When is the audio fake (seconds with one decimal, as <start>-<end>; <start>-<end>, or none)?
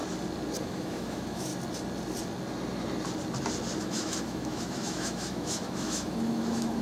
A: 0.6-1.5; 3.8-6.8